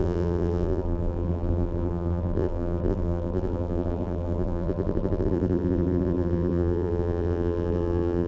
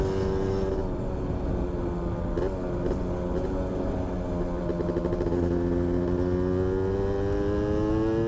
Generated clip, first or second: first